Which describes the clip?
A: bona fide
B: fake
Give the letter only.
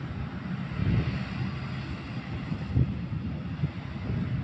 A